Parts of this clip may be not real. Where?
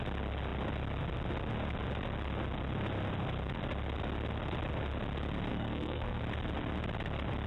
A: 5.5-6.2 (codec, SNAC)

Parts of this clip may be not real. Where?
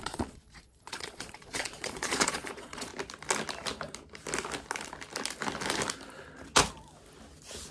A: 0.0-2.9 (vocoder, Vocos)